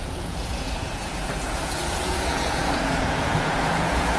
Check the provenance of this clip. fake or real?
fake